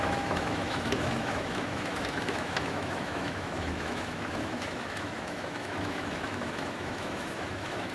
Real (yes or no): no